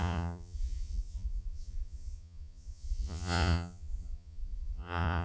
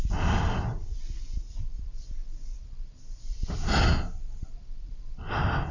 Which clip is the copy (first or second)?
first